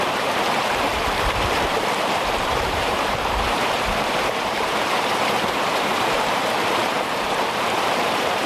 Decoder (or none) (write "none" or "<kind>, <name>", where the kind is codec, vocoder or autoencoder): vocoder, BigVGAN v2